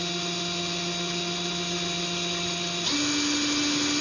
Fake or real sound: real